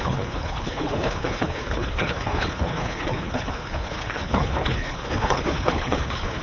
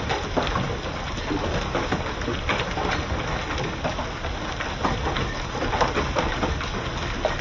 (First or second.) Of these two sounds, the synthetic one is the first